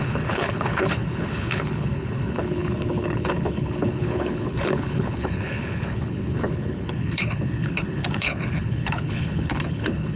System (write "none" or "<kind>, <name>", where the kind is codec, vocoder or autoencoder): codec, HILCodec